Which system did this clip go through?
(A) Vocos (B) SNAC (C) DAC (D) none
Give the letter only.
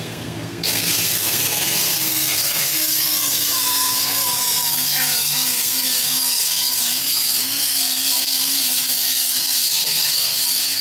B